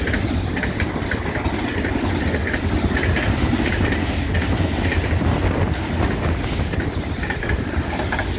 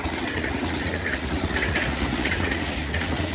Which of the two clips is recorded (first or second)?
first